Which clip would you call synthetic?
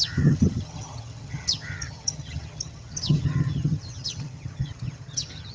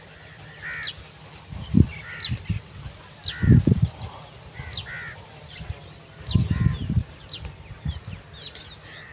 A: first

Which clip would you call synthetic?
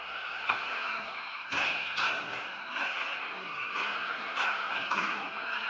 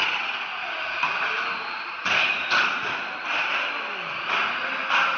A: first